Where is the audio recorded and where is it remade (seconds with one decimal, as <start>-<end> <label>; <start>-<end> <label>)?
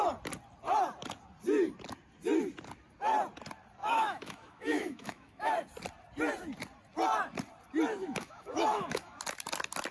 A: 0.0-3.8 recorded; 3.8-5.5 remade; 5.5-8.0 recorded; 8.0-9.2 remade; 9.2-9.9 recorded